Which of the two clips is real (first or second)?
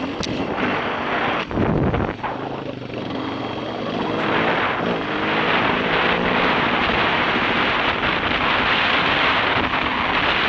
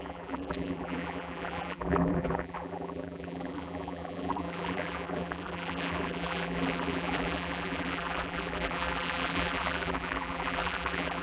first